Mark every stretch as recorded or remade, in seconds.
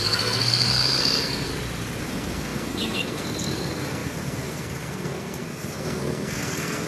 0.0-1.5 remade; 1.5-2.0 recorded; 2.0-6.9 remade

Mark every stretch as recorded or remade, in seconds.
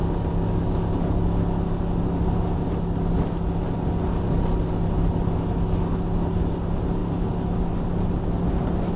0.0-9.0 recorded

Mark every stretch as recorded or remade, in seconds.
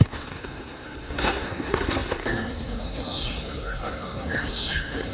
0.0-5.1 remade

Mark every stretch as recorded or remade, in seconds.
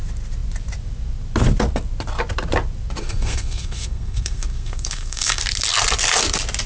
0.0-3.0 recorded; 3.0-5.4 remade; 5.4-6.7 recorded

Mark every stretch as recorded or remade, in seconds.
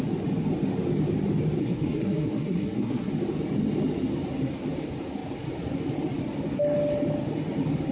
0.0-1.6 recorded; 1.6-3.1 remade; 3.1-7.9 recorded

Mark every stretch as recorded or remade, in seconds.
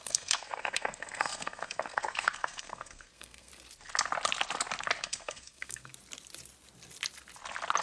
0.0-3.5 remade; 3.5-5.0 recorded; 5.0-5.9 remade; 5.9-7.8 recorded